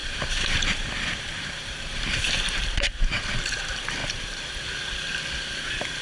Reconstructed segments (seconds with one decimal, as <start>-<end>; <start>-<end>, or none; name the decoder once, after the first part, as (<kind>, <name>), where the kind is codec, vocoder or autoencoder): 0.0-3.6 (vocoder, BigVGAN v2); 4.0-4.6